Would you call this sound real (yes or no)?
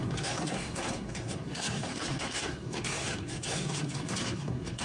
no